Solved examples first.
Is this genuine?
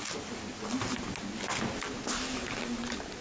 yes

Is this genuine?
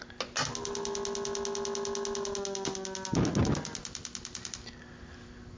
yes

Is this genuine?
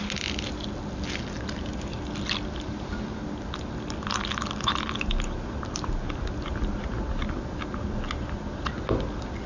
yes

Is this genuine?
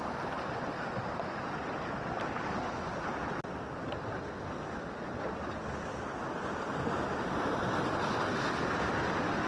yes